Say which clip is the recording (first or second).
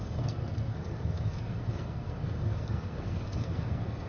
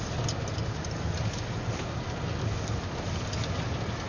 second